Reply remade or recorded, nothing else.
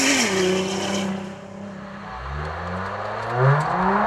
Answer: recorded